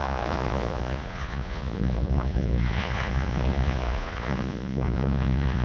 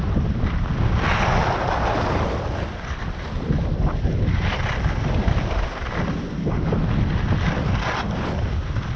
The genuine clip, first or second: second